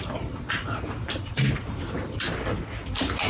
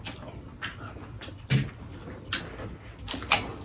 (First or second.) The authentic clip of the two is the second